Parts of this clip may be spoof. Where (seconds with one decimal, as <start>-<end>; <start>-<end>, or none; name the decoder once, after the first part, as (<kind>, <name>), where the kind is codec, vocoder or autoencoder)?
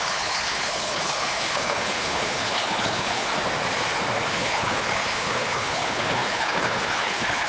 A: 0.0-3.3 (codec, HILCodec); 4.3-7.5